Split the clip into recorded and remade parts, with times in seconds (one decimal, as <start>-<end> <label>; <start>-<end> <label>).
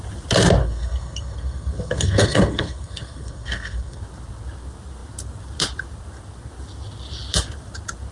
0.0-0.6 recorded; 0.6-4.0 remade; 4.0-8.1 recorded